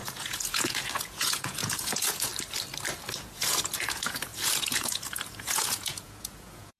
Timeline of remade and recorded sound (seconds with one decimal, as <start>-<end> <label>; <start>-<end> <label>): 0.0-2.3 remade; 2.3-3.1 recorded; 3.1-6.8 remade

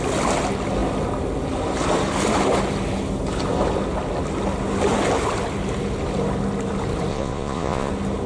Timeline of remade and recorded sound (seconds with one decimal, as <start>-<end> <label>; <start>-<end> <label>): 0.0-7.1 recorded; 7.1-7.9 remade; 7.9-8.3 recorded

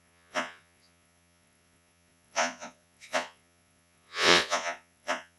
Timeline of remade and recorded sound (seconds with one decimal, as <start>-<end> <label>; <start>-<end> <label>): 0.0-5.4 remade

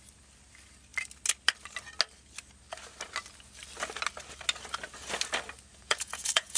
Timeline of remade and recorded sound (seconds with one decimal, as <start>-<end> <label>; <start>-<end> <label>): 0.0-5.7 recorded; 5.7-6.6 remade